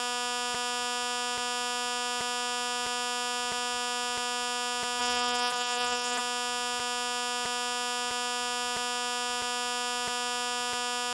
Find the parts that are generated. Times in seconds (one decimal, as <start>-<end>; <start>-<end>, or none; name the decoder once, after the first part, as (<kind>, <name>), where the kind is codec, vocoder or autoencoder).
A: 5.0-6.2 (codec, SNAC)